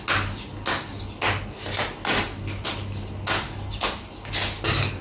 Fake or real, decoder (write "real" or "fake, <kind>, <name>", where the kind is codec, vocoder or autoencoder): real